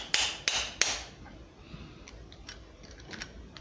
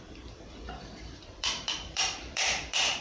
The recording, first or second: first